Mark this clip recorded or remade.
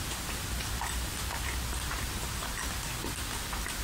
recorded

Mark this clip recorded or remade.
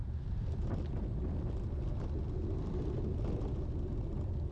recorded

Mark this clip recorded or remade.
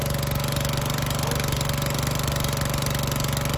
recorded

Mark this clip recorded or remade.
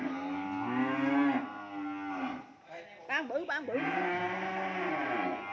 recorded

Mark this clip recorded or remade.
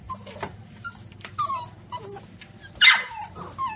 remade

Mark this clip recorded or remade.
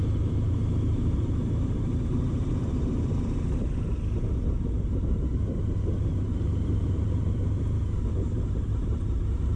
remade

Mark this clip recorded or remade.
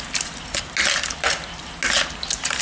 recorded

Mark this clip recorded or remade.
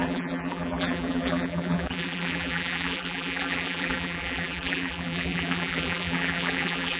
remade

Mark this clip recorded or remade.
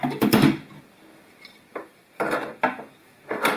recorded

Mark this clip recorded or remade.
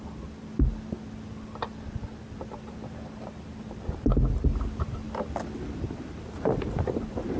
remade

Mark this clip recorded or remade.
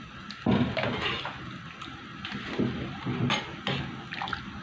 recorded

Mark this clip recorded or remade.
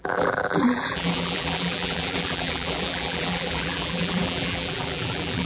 remade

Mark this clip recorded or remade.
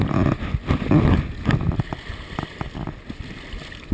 recorded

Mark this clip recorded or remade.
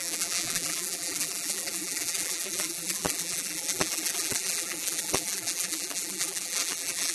remade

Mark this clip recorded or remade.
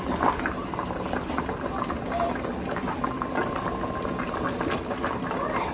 recorded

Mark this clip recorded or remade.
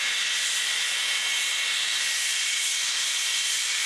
remade